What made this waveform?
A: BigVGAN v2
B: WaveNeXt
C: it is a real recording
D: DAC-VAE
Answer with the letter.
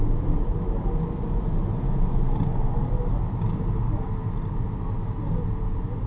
C